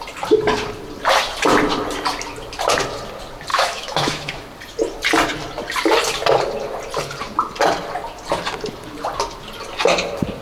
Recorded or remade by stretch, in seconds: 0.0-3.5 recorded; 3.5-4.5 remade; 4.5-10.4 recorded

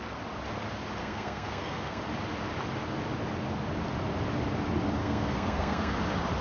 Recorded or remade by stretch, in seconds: 0.0-1.0 recorded; 1.0-2.0 remade; 2.0-5.0 recorded; 5.0-6.0 remade; 6.0-6.4 recorded

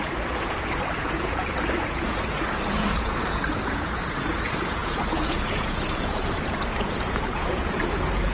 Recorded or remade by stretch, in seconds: 0.0-8.3 remade

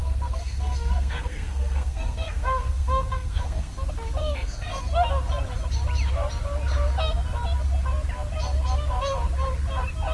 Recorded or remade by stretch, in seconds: 0.0-3.7 remade; 3.7-4.2 recorded; 4.2-4.8 remade; 4.8-10.1 recorded

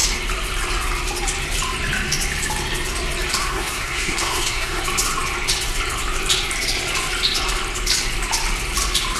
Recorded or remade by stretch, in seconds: 0.0-3.4 recorded; 3.4-4.8 remade; 4.8-9.2 recorded

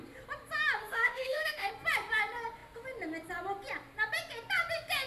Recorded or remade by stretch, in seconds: 0.0-0.8 recorded; 0.8-1.7 remade; 1.7-5.1 recorded

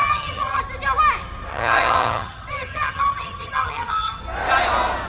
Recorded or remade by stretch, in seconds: 0.0-0.6 remade; 0.6-1.5 recorded; 1.5-4.2 remade; 4.2-5.1 recorded

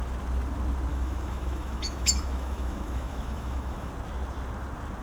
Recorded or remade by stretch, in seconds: 0.0-0.9 recorded; 0.9-3.9 remade; 3.9-5.0 recorded